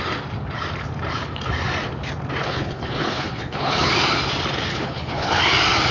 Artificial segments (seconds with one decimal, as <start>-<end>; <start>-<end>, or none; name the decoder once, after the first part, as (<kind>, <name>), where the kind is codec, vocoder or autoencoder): 2.4-3.9 (codec, HILCodec); 4.7-5.4